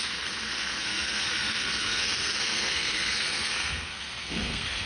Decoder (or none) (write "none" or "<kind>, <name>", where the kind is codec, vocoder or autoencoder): codec, SNAC